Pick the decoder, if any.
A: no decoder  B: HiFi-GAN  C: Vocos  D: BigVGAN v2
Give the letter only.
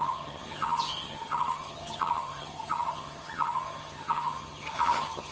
B